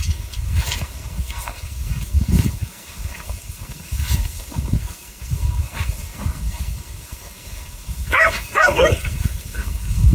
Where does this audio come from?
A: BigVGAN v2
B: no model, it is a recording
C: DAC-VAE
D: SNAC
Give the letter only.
D